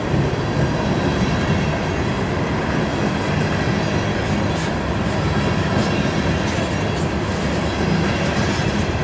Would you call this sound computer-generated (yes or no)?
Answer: no